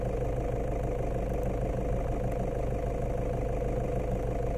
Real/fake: real